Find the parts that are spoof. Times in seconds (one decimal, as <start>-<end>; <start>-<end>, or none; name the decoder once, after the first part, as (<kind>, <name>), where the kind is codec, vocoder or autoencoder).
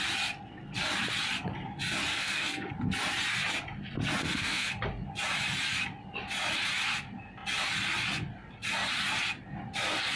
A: 2.1-2.7 (codec, SNAC); 4.2-4.7